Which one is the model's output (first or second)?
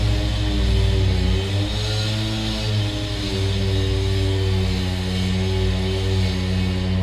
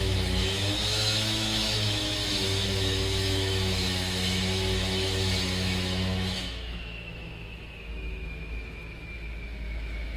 second